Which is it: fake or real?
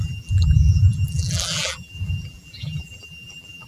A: fake